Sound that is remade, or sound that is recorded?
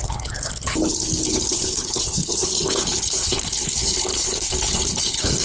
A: remade